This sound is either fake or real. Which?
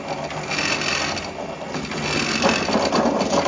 real